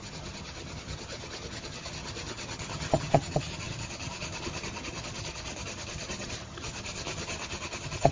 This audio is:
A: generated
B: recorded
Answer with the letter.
A